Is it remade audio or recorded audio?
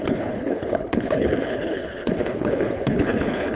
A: remade